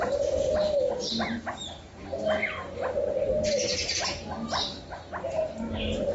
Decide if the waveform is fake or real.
real